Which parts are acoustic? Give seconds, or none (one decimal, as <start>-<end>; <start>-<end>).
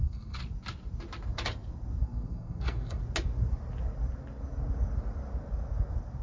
0.4-2.0; 3.0-6.2